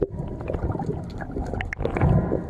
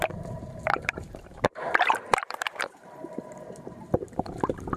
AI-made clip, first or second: second